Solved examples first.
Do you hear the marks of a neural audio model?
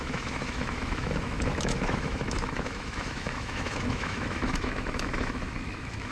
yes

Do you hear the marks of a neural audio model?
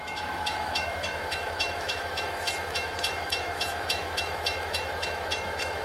yes